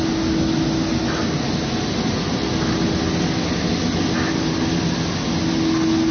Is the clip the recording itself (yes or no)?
yes